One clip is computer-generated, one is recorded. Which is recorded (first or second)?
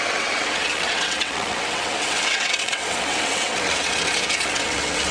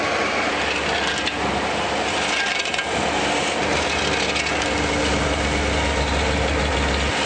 second